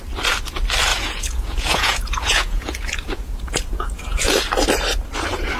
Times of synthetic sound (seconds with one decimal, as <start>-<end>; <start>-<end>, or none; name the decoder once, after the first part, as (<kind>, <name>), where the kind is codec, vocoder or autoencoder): 0.9-4.3 (vocoder, Vocos)